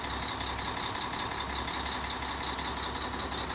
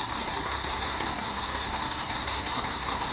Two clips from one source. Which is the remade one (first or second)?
second